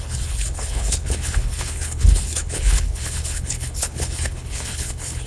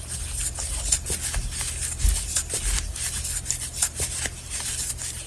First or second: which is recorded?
second